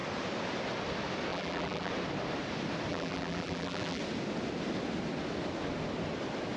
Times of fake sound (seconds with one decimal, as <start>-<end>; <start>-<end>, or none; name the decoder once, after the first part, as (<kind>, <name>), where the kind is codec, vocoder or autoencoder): 1.3-1.9 (vocoder, BigVGAN v2); 2.9-4.0